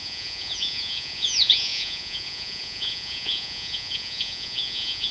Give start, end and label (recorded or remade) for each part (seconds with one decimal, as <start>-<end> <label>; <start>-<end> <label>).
0.0-5.1 remade